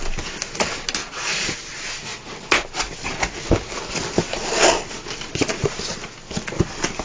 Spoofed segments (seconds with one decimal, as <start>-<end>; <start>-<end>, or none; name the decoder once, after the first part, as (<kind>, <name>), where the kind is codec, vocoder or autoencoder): 1.0-1.7 (vocoder, Vocos)